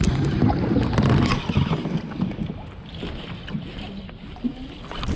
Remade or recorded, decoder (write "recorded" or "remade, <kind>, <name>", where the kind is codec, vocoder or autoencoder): recorded